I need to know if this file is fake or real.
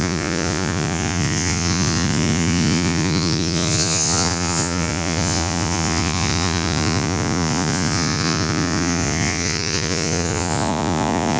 fake